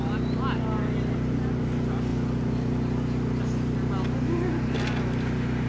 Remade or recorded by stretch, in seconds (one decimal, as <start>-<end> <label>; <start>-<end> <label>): 0.0-5.7 recorded